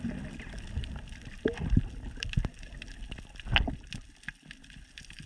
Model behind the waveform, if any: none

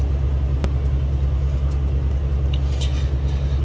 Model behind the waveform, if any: none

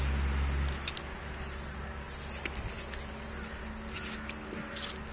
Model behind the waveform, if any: none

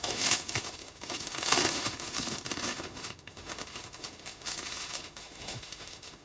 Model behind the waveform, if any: autoencoder, DAC-VAE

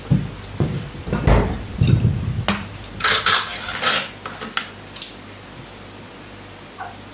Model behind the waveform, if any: none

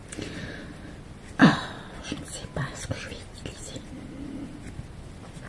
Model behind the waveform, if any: none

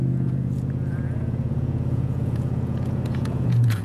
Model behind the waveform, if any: vocoder, Vocos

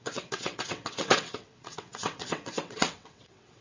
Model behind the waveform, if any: vocoder, WaveNeXt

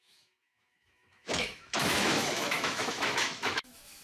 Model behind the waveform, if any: autoencoder, DAC-VAE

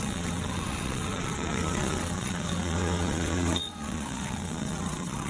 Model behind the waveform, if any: vocoder, WaveNeXt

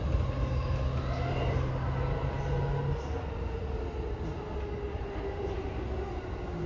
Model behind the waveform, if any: none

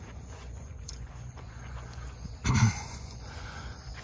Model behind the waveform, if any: vocoder, Vocos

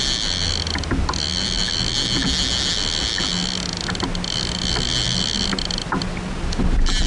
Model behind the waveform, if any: none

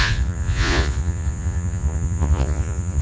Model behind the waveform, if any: vocoder, Vocos